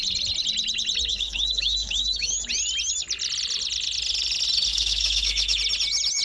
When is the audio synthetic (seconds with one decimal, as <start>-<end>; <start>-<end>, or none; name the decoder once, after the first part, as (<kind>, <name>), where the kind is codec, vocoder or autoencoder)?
1.1-2.5 (autoencoder, DAC-VAE); 4.7-5.6